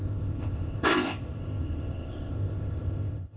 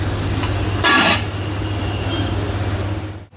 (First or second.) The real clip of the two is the second